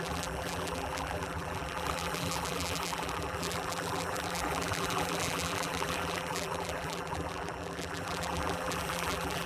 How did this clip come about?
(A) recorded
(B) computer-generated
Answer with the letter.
B